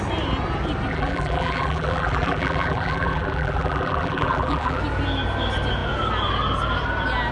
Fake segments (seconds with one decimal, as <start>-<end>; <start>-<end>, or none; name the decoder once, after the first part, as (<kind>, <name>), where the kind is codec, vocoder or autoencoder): 0.9-4.8 (vocoder, BigVGAN v2)